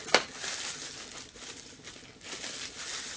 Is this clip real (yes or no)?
yes